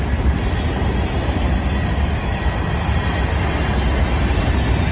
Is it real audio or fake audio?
real